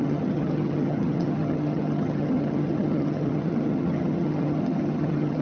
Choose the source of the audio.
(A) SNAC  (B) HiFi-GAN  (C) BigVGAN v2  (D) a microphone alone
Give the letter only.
B